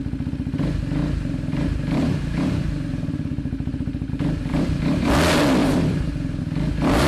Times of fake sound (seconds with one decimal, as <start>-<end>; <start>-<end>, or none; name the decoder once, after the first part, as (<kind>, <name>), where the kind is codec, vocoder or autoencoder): 1.0-4.1 (vocoder, BigVGAN v2); 4.5-5.1; 5.6-6.4